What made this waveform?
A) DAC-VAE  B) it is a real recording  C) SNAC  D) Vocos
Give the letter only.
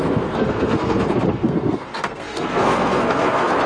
C